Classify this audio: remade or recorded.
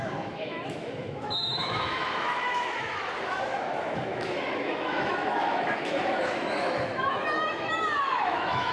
remade